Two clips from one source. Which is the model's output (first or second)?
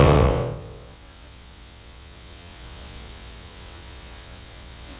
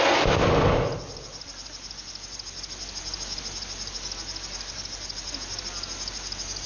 first